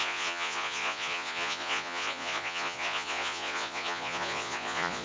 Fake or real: fake